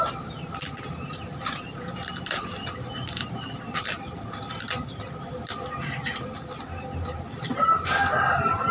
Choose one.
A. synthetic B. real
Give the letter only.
A